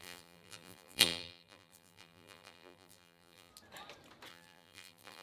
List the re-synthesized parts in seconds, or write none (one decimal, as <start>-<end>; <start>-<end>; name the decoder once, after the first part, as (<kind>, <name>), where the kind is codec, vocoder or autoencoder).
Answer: 0.0-3.5 (vocoder, BigVGAN v2); 4.3-5.2